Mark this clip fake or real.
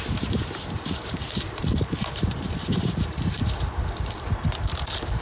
fake